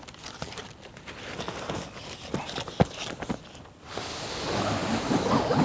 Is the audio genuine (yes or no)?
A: yes